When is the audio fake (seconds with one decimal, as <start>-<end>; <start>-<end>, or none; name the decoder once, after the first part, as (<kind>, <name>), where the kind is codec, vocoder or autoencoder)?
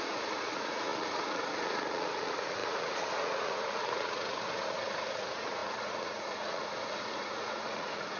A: 0.0-8.2 (vocoder, Vocos)